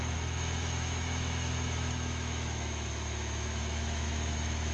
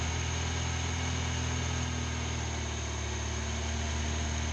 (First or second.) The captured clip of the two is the second